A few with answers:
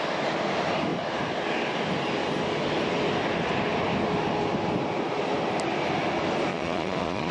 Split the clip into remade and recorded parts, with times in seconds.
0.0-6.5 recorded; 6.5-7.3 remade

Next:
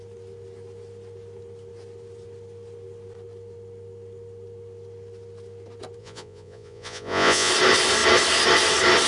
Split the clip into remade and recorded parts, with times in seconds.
0.0-6.0 recorded; 6.0-7.5 remade; 7.5-9.1 recorded

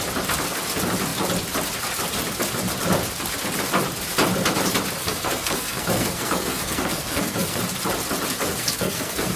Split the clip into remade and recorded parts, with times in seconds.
0.0-5.0 recorded; 5.0-7.6 remade; 7.6-8.5 recorded; 8.5-9.4 remade